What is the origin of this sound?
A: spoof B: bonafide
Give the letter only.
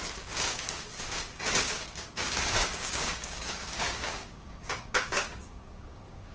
A